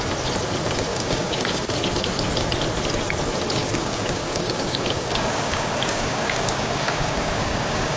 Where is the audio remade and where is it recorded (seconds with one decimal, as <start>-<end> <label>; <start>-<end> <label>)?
0.0-0.9 recorded; 0.9-1.7 remade; 1.7-3.6 recorded; 3.6-8.0 remade